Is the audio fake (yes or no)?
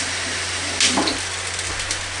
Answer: no